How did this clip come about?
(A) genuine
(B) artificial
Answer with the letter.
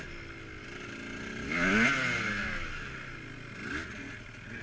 A